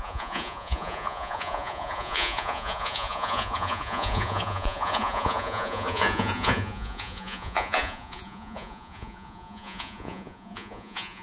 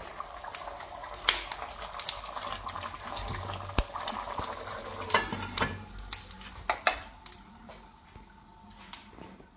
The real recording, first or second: second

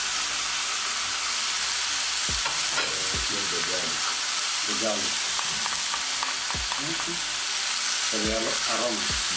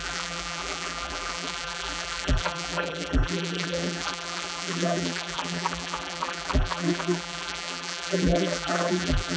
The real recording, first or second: first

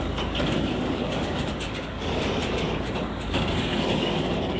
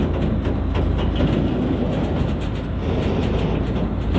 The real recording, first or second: second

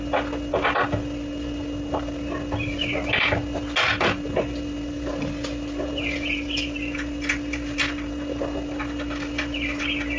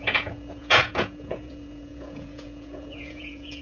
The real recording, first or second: first